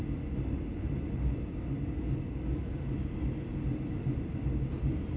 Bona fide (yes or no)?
yes